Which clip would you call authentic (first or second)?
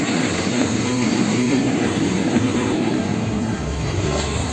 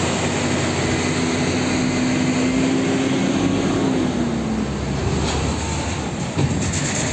second